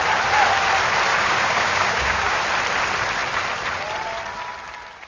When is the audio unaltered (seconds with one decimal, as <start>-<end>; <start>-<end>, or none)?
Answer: 0.0-1.1; 2.4-5.1